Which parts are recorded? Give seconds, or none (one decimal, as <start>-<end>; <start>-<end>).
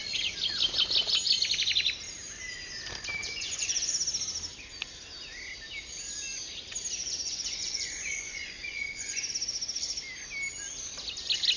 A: 0.0-3.2; 3.9-7.0; 9.3-11.6